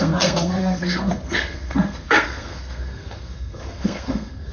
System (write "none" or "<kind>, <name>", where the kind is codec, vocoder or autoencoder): codec, SNAC